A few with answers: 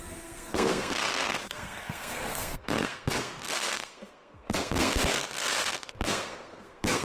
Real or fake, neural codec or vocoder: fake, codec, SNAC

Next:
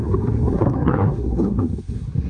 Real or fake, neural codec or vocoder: fake, codec, SNAC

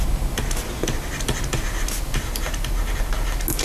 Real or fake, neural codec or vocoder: real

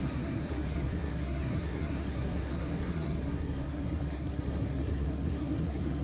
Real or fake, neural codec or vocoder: fake, codec, SNAC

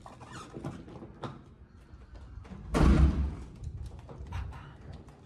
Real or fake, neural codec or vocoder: real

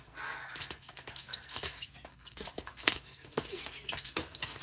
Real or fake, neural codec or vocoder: fake, codec, SNAC